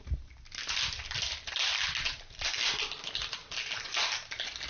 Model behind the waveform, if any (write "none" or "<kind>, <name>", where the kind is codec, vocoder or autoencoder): none